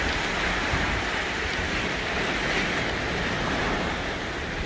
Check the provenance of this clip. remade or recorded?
recorded